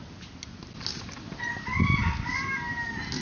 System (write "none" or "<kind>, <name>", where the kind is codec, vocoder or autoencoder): none